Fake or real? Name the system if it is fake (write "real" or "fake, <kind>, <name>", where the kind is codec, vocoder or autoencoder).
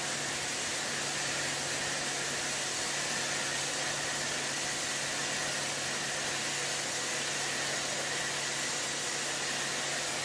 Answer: real